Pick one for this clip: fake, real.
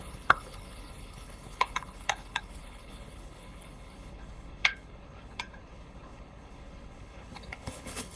fake